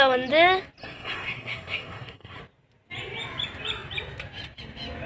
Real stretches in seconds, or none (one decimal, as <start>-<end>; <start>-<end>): 0.0-0.8; 2.4-5.1